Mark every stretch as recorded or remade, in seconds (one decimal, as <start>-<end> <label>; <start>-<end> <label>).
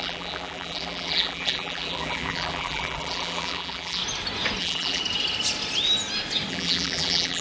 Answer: 0.0-4.0 remade; 4.0-4.6 recorded; 4.6-5.0 remade; 5.0-6.5 recorded; 6.5-7.4 remade